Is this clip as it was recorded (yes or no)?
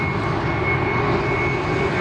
yes